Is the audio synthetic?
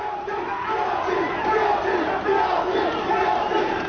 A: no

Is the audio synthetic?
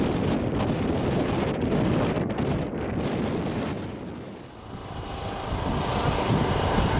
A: no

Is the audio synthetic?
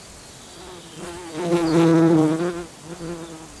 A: no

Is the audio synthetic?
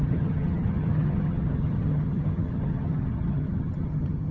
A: yes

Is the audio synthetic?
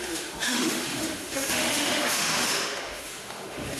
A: yes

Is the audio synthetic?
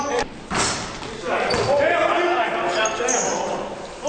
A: no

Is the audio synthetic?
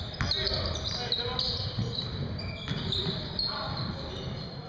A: no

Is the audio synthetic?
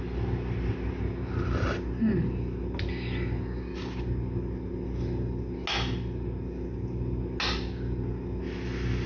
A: no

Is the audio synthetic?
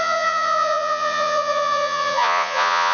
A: yes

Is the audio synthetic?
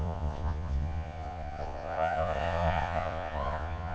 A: yes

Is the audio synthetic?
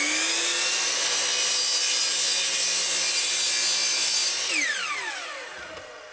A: no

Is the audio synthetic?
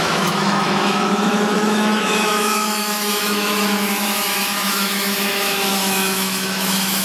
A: yes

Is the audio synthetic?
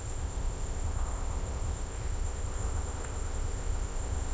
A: yes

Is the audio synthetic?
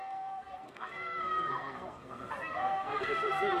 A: yes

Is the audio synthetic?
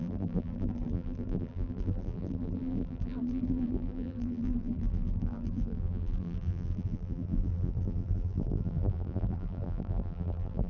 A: yes